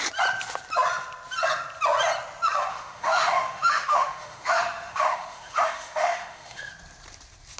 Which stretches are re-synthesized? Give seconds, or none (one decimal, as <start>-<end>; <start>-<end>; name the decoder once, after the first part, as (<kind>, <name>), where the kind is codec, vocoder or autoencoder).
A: 2.7-6.7 (autoencoder, DAC-VAE)